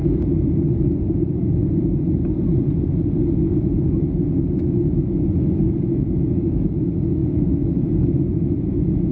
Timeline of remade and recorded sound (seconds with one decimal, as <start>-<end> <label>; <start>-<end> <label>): 0.0-3.9 recorded; 3.9-9.1 remade